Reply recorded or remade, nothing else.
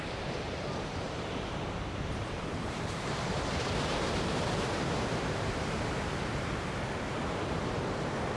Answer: remade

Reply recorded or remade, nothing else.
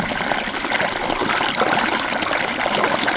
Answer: recorded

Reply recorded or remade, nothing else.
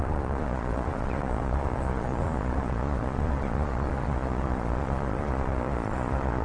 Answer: remade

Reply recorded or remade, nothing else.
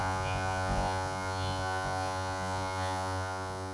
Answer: remade